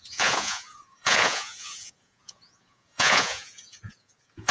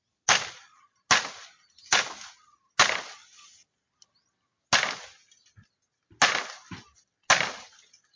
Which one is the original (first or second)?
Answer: second